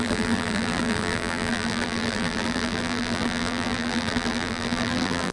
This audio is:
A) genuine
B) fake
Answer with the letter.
B